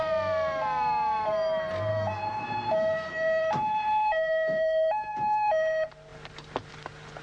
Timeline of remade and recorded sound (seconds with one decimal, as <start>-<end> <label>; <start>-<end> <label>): 0.0-1.9 recorded; 1.9-5.5 remade; 5.5-7.2 recorded